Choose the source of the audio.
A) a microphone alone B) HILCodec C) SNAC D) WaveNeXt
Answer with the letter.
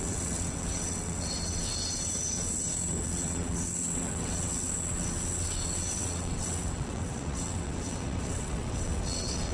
D